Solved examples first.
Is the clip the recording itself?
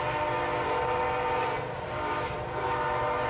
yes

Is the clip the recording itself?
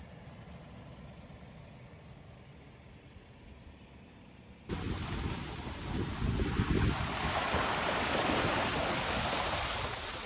yes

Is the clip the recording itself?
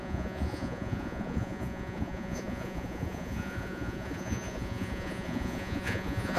no